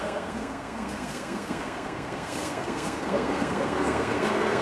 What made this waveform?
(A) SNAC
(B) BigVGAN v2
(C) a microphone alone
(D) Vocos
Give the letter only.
A